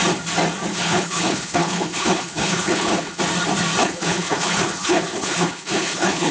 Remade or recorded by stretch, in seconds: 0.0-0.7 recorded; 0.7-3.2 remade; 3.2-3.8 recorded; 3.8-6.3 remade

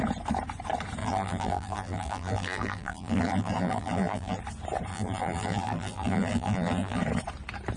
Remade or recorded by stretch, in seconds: 0.0-1.0 recorded; 1.0-4.4 remade; 4.4-4.9 recorded; 4.9-7.0 remade; 7.0-7.8 recorded

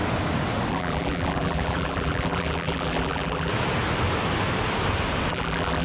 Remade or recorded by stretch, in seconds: 0.0-0.7 recorded; 0.7-3.5 remade; 3.5-5.3 recorded; 5.3-5.8 remade